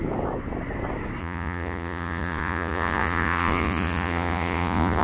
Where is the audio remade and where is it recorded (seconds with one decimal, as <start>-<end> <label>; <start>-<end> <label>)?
0.0-1.2 recorded; 1.2-5.0 remade

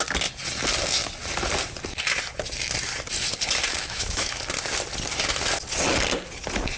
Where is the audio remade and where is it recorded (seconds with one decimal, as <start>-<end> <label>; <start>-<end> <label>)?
0.0-3.7 recorded; 3.7-4.4 remade; 4.4-6.8 recorded